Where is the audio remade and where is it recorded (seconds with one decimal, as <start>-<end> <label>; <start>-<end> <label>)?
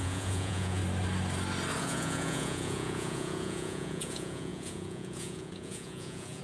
0.0-0.8 remade; 0.8-1.8 recorded; 1.8-6.4 remade